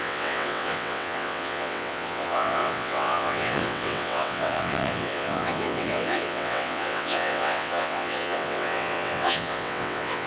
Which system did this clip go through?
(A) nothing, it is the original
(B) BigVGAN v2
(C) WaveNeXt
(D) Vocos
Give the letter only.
C